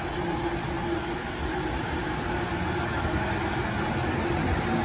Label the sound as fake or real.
real